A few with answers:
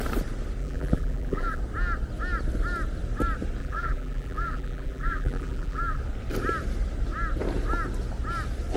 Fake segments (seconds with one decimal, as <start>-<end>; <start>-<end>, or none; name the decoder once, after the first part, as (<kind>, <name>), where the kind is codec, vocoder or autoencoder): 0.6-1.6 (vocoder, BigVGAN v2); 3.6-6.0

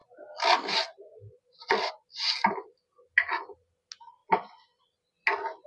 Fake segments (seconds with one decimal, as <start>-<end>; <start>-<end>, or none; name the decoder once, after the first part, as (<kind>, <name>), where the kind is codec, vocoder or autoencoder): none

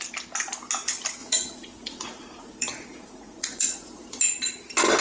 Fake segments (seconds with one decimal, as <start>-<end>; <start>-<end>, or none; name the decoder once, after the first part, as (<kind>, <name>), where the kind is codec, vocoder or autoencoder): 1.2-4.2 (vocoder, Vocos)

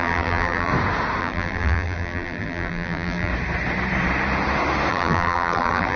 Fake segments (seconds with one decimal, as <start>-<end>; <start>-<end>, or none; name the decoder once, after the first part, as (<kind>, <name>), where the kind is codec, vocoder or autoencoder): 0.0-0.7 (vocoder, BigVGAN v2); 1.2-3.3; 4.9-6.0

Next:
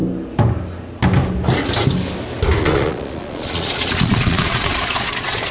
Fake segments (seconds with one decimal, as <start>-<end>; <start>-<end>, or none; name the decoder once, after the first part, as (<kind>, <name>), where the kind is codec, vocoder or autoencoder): 2.6-5.5 (vocoder, Vocos)

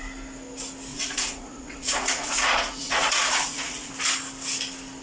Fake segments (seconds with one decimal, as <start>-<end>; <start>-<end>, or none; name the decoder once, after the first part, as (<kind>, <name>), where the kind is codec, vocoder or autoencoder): 0.9-3.9 (vocoder, Vocos)